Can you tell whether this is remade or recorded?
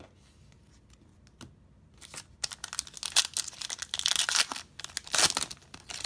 recorded